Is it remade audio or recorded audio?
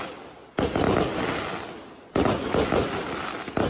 recorded